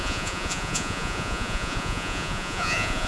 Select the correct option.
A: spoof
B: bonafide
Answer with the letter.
A